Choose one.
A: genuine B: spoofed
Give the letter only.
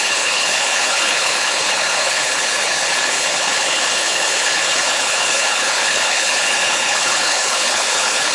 B